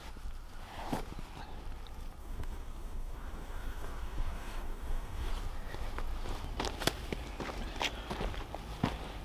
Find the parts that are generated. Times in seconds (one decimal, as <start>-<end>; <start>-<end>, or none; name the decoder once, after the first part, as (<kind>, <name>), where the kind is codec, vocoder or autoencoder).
2.2-5.3 (codec, DAC)